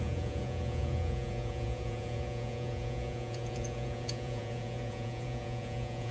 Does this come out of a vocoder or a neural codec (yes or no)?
yes